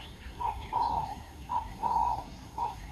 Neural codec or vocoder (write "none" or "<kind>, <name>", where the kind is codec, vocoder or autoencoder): codec, SNAC